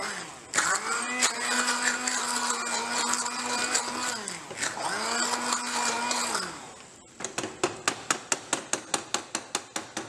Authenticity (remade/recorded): recorded